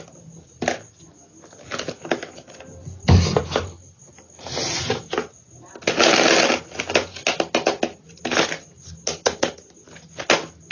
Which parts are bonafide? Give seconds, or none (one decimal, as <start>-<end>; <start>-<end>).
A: 0.0-2.8; 4.1-10.7